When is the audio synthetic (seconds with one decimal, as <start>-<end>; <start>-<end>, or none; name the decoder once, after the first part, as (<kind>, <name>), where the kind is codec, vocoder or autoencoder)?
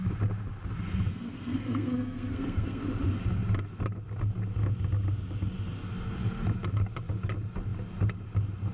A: 1.1-2.8 (codec, SNAC)